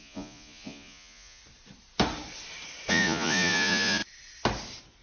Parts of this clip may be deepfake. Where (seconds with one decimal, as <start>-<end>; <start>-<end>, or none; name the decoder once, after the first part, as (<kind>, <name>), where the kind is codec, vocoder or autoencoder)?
0.0-1.4 (vocoder, Vocos); 2.9-4.0